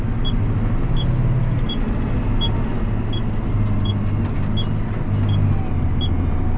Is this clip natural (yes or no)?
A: yes